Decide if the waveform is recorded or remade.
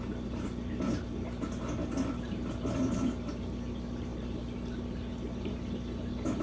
recorded